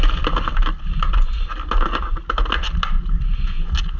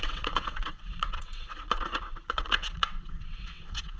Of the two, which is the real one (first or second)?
first